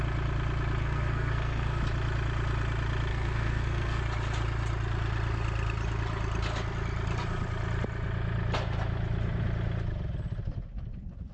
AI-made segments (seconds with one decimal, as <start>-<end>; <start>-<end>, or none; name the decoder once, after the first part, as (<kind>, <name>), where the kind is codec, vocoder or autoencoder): 0.8-1.8 (codec, SNAC); 3.1-4.0